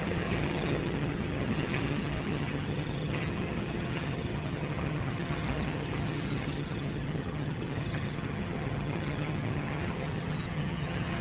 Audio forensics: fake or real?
fake